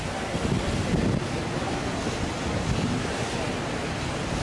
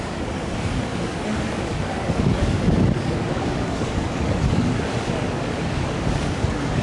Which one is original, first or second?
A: first